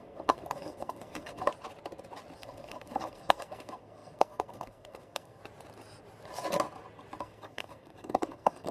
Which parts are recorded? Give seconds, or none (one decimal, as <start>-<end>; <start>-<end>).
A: 1.5-2.4; 5.4-7.2